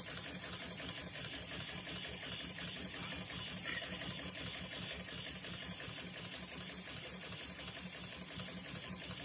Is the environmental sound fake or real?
real